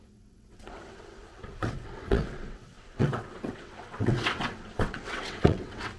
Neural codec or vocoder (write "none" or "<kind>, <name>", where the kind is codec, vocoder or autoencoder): vocoder, WaveNeXt